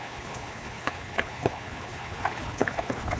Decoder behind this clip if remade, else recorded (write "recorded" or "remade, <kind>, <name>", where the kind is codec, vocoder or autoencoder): remade, codec, HILCodec